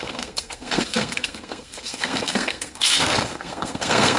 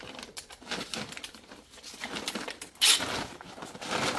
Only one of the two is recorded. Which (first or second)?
second